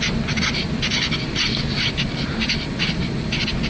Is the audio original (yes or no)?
yes